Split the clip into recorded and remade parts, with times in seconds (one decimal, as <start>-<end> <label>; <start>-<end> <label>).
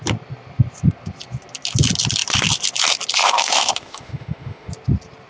0.0-3.2 recorded; 3.2-4.7 remade; 4.7-5.3 recorded